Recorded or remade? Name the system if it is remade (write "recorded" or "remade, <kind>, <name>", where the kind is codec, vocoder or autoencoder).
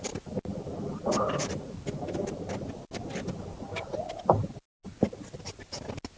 recorded